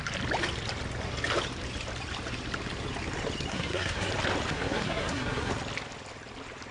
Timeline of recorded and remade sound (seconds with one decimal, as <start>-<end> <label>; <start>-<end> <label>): 0.0-3.5 recorded; 3.5-4.1 remade; 4.1-4.5 recorded; 4.5-5.5 remade; 5.5-6.7 recorded